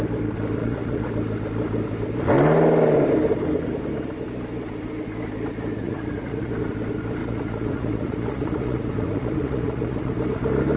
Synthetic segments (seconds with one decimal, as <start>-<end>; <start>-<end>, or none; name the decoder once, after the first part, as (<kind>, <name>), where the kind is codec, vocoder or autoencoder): 0.6-1.1 (vocoder, Vocos); 5.8-6.5; 7.2-10.1